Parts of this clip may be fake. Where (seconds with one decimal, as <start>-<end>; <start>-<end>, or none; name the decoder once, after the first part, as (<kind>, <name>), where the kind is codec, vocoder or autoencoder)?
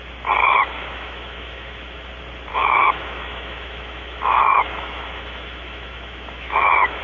0.4-2.1 (autoencoder, DAC-VAE); 2.5-7.0